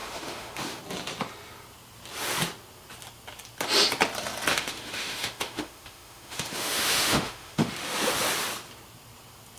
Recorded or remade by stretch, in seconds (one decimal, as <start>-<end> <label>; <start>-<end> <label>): 0.0-0.8 remade; 0.8-4.5 recorded; 4.5-7.7 remade; 7.7-9.6 recorded